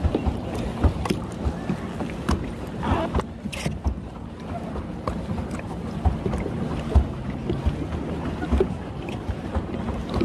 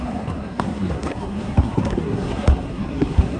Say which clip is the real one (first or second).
first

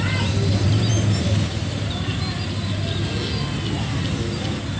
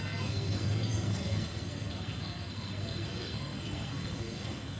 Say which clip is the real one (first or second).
first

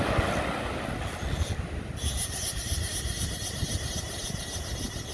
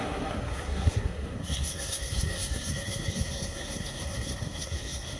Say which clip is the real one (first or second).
first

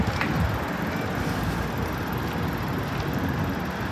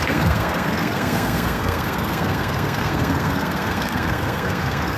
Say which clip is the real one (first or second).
first